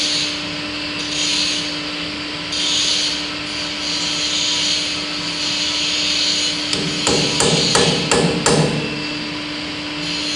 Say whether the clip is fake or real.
real